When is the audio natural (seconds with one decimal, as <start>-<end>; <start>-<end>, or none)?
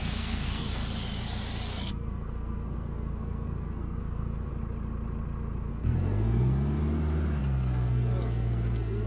0.8-1.7; 4.5-5.7; 6.8-7.4